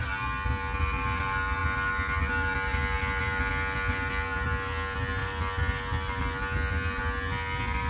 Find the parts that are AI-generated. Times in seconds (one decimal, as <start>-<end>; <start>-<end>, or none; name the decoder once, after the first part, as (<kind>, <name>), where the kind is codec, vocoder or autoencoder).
none

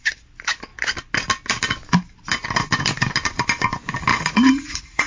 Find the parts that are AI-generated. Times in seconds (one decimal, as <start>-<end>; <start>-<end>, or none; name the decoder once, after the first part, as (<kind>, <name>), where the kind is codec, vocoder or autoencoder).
4.1-5.1 (vocoder, Vocos)

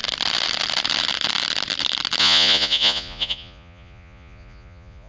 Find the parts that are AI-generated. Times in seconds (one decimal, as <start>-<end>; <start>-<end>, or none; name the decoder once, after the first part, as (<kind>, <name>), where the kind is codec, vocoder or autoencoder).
2.2-5.1 (vocoder, Vocos)